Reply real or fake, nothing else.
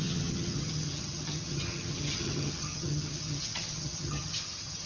fake